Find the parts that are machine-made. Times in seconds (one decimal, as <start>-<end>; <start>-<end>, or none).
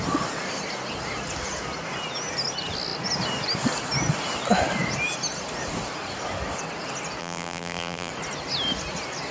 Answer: 7.2-8.1